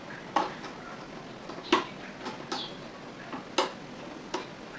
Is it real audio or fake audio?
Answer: real